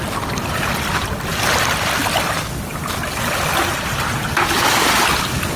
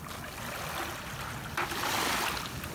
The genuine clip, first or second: second